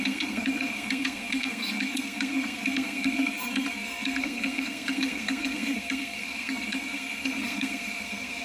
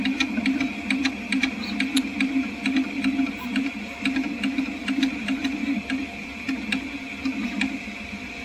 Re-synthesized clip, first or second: first